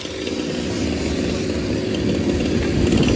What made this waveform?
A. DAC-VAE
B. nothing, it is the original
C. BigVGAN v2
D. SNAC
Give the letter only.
B